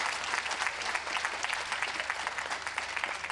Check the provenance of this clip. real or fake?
real